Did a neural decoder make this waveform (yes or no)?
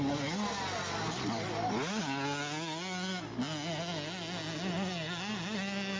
no